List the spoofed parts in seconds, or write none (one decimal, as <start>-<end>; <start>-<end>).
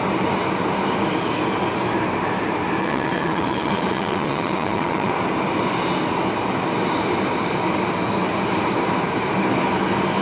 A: 2.8-5.1